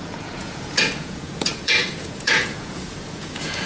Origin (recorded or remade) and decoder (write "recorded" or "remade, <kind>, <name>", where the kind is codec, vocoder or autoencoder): remade, vocoder, Vocos